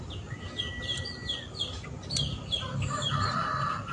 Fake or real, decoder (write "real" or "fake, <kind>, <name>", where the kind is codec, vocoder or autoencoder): fake, vocoder, BigVGAN v2